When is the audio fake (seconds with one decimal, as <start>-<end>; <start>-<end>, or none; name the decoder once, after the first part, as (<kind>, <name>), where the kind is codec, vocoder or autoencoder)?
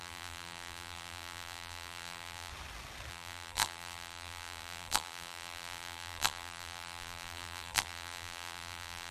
0.0-2.5 (vocoder, BigVGAN v2); 3.1-9.1